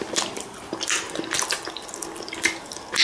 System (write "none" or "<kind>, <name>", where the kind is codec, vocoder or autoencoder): none